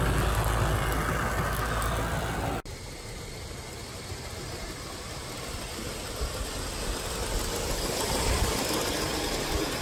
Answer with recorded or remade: recorded